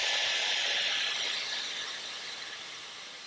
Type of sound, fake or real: real